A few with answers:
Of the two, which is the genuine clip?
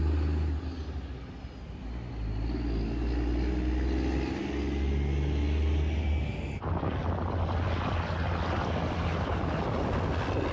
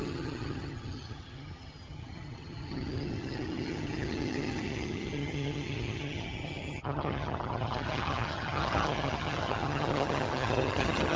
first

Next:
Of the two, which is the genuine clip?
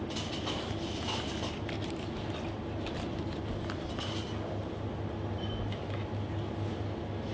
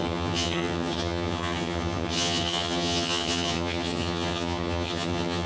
first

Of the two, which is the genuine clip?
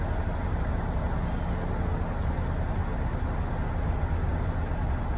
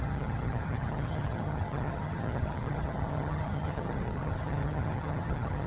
first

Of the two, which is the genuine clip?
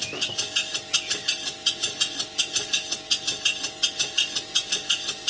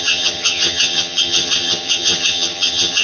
first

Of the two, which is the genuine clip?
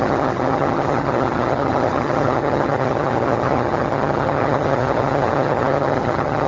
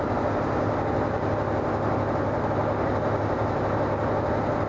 second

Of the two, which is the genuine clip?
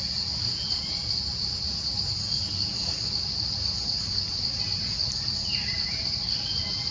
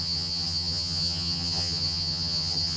first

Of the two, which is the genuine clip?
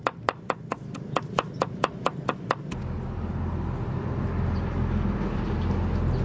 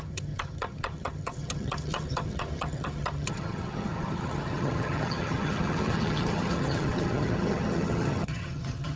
first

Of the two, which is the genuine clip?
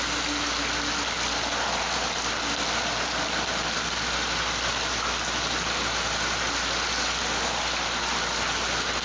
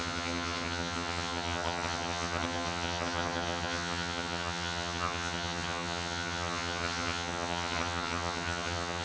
first